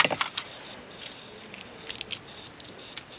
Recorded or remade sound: recorded